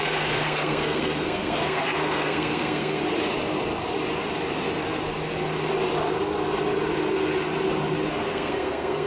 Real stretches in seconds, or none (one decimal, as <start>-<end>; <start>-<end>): 3.0-8.1